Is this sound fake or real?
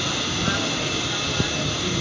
real